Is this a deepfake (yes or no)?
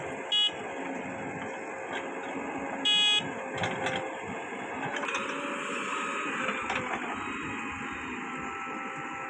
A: no